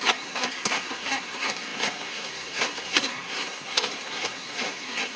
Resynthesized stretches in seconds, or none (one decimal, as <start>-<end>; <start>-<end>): 0.0-5.2